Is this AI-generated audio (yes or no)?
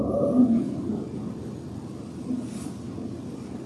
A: no